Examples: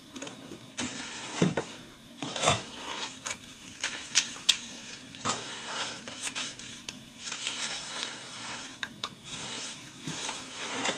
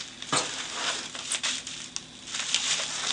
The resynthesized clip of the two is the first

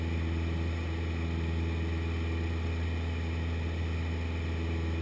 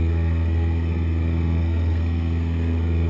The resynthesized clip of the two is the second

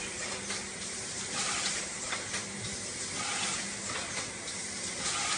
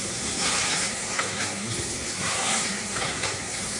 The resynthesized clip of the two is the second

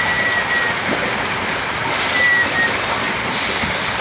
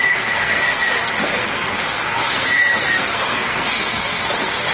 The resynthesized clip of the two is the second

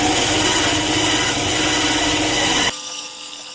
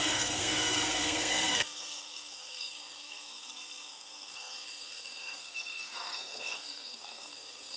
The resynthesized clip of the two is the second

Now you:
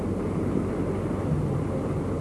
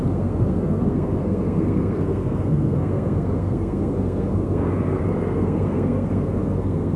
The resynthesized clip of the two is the second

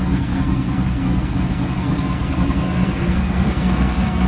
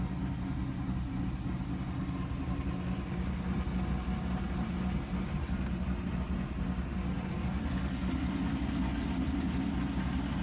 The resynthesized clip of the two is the first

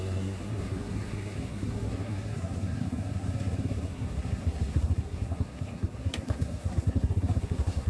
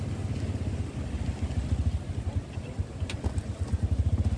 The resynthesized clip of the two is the first